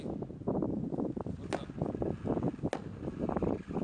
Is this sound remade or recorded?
recorded